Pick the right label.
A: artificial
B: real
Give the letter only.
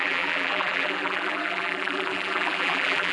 A